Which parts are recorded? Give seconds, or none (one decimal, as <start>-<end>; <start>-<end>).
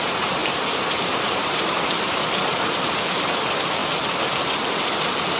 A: 3.8-4.8